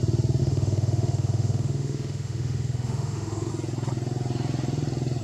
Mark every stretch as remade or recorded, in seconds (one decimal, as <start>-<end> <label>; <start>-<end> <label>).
0.0-0.4 recorded; 0.4-3.5 remade; 3.5-5.2 recorded